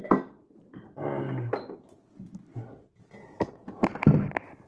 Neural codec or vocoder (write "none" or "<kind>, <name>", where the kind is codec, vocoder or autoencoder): none